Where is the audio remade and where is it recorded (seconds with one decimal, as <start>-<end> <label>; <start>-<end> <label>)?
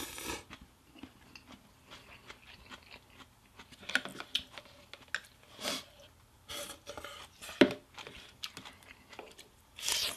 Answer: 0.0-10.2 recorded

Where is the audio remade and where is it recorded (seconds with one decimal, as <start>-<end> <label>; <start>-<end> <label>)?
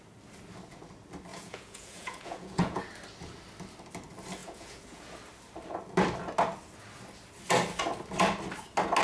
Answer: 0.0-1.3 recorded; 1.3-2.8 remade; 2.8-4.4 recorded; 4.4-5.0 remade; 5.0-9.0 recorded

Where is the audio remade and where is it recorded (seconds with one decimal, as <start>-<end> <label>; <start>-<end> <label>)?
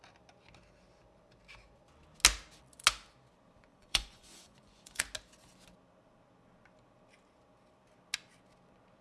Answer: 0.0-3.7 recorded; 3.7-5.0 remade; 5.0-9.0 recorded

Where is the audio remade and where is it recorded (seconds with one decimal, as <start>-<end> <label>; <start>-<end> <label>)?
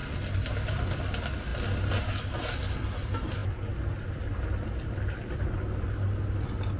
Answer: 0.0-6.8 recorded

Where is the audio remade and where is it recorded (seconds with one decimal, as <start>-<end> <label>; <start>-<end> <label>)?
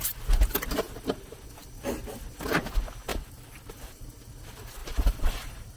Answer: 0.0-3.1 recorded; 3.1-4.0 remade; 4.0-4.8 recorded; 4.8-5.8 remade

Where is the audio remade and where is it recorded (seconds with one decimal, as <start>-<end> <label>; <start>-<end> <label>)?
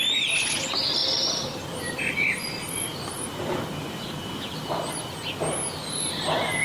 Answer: 0.0-6.6 recorded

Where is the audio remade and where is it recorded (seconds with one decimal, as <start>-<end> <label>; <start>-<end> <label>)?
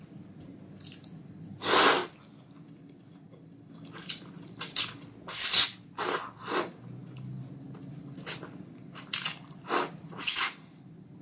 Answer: 0.0-11.2 recorded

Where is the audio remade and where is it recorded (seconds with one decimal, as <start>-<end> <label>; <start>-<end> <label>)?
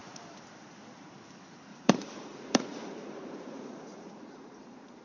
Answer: 0.0-1.7 recorded; 1.7-5.0 remade